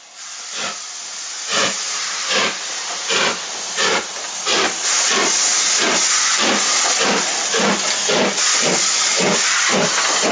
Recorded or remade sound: recorded